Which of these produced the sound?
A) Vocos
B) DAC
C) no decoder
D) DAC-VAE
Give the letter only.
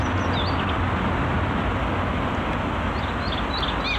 C